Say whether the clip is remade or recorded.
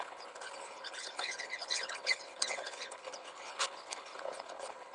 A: remade